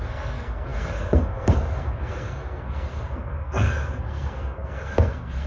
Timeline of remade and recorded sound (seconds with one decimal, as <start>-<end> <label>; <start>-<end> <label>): 0.0-5.5 remade